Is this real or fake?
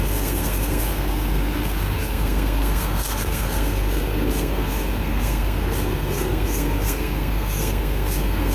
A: fake